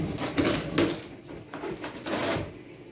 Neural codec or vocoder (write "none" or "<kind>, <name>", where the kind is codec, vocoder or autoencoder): vocoder, BigVGAN v2